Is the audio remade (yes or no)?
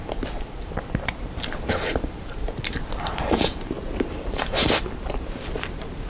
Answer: yes